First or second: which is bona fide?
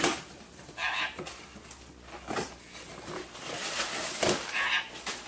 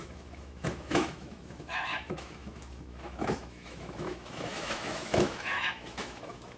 first